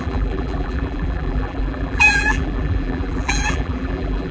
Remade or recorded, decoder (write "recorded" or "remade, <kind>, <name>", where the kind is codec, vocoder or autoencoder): remade, vocoder, BigVGAN v2